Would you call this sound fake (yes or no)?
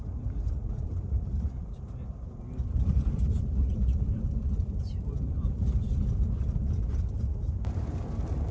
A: yes